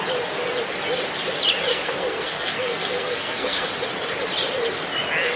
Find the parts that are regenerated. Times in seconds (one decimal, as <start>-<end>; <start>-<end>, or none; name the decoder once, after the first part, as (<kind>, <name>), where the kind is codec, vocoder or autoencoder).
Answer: 1.7-3.7 (codec, SNAC)